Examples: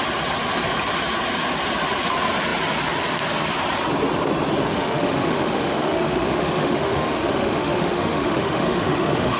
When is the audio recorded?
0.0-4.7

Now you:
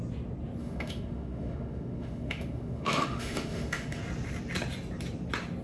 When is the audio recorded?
0.0-0.6; 4.0-5.6

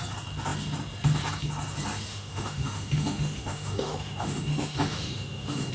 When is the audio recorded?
0.0-2.1

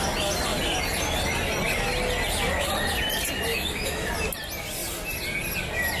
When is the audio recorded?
0.0-3.5; 4.1-6.0

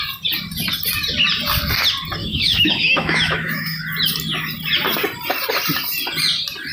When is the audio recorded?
0.0-2.2; 3.8-6.7